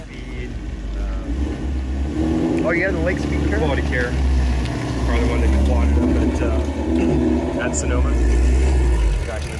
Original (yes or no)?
yes